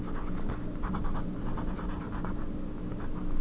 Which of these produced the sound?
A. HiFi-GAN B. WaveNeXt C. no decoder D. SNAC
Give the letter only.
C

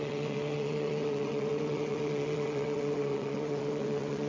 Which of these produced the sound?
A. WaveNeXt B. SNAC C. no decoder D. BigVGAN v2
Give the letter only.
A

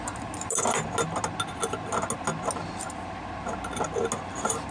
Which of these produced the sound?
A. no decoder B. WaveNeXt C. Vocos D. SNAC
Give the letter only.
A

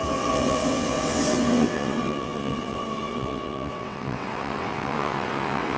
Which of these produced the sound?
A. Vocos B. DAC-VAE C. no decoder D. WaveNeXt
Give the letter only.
D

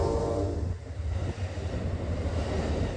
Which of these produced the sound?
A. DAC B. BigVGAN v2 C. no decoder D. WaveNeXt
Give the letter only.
C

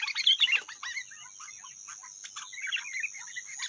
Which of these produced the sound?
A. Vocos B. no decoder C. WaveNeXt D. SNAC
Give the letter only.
B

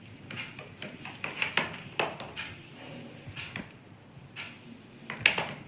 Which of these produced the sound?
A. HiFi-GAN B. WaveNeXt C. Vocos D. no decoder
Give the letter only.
D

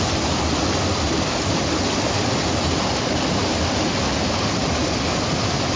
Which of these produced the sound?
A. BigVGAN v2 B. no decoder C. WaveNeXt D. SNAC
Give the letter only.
B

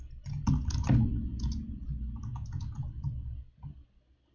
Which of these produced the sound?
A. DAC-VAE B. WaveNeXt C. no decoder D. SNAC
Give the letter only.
C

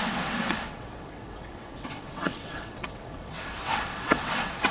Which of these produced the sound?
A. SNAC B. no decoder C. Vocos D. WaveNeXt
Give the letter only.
D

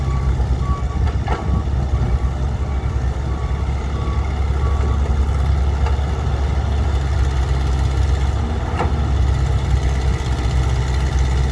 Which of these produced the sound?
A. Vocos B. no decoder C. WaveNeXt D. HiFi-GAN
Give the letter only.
B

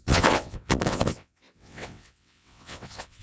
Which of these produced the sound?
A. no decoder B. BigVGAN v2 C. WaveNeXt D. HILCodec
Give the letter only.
C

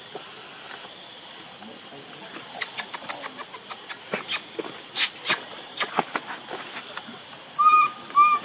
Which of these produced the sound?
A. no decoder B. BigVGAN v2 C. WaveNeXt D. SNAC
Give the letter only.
A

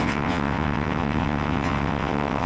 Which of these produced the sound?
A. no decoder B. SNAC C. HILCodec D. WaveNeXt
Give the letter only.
D